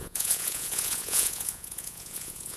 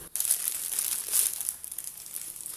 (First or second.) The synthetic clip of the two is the first